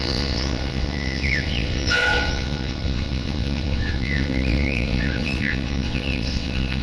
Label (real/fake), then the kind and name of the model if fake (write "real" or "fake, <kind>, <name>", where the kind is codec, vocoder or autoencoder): fake, vocoder, WaveNeXt